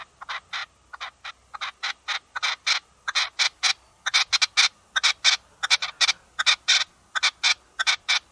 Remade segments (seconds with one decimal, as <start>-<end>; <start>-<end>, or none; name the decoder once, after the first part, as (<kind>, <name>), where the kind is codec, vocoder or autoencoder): none